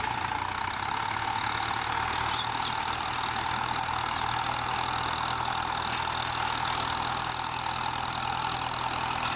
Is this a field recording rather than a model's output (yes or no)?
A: yes